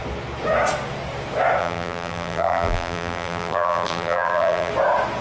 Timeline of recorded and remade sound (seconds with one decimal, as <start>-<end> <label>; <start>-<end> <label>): 0.0-1.6 recorded; 1.6-4.7 remade; 4.7-5.2 recorded